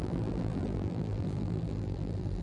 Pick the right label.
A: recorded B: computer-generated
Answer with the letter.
B